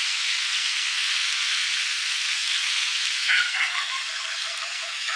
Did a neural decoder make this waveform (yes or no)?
yes